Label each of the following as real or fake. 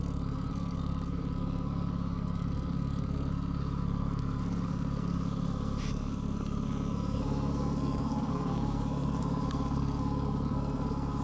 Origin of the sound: fake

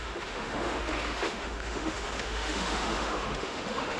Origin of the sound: fake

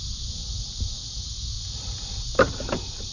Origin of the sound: real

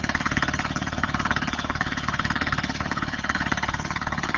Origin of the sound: fake